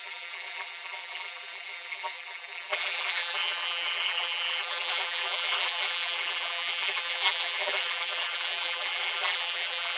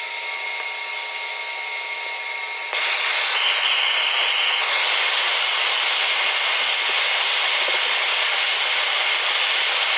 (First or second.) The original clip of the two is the second